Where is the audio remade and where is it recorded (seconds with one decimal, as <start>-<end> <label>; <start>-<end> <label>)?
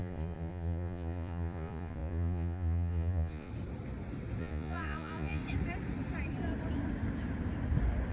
0.0-3.5 remade; 3.5-4.4 recorded; 4.4-5.4 remade; 5.4-8.1 recorded